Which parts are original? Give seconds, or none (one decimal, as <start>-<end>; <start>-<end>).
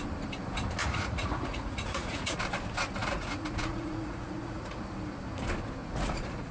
0.0-0.8; 2.4-3.0; 4.8-5.8